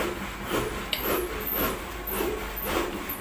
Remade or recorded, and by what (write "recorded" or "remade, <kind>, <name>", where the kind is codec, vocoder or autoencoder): recorded